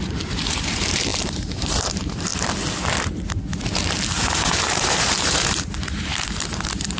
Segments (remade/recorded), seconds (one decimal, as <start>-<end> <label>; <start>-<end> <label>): 0.0-2.3 remade; 2.3-4.6 recorded; 4.6-7.0 remade